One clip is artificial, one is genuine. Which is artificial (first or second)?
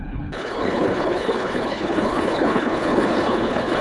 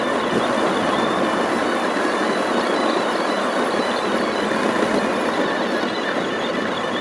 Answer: first